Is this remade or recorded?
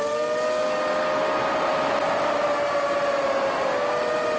recorded